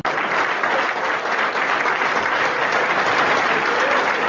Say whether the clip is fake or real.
real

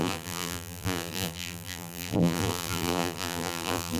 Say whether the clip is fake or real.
fake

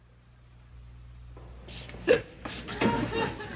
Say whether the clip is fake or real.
fake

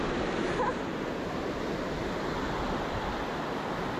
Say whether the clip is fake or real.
real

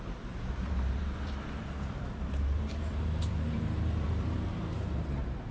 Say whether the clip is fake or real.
fake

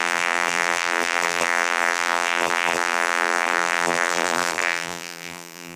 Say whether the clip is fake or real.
fake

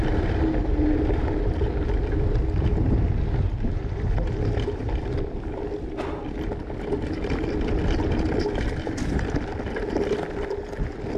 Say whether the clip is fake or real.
real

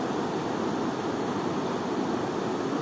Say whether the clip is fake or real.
real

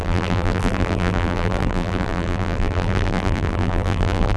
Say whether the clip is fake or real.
fake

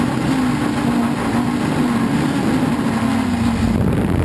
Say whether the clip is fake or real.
real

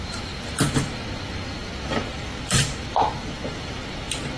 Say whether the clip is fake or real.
fake